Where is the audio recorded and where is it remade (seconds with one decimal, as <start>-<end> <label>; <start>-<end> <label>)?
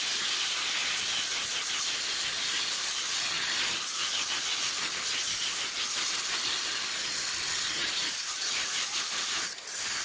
0.0-10.0 recorded